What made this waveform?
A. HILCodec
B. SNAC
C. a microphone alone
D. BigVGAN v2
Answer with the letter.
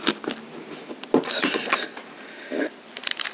C